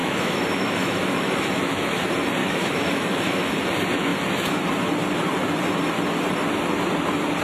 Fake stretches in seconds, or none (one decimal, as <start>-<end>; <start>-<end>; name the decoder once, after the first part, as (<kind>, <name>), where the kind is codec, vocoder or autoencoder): 0.0-1.9 (autoencoder, DAC-VAE); 2.4-3.5